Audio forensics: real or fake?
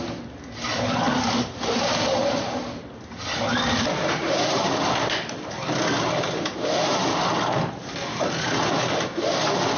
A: real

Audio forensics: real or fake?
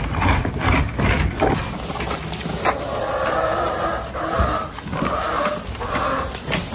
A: real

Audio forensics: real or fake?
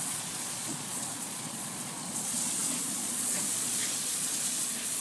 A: fake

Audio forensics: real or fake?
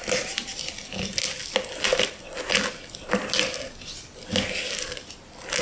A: real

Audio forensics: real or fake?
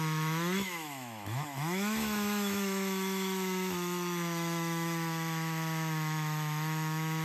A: fake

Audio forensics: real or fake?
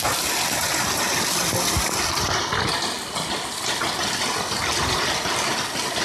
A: real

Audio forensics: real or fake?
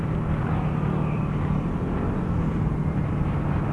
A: real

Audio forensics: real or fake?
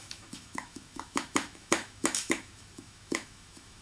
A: fake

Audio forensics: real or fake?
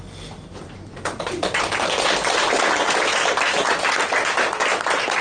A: real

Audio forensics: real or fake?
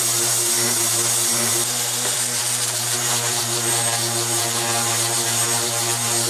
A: fake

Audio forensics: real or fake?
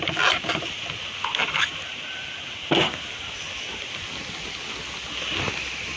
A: real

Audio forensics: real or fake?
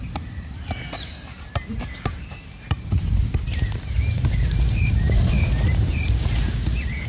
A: fake